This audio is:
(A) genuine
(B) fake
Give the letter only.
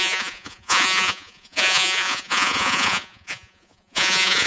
B